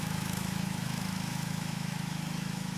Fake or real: fake